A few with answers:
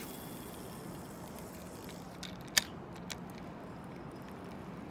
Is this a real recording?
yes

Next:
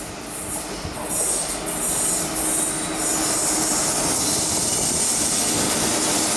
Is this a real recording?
yes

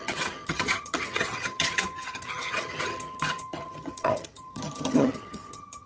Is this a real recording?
no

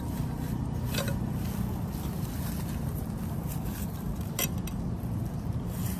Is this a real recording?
yes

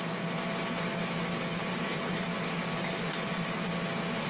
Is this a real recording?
yes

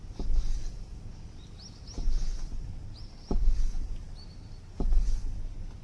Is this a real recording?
yes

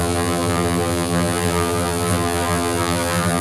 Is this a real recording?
no